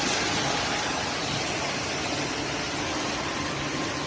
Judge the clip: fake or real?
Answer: real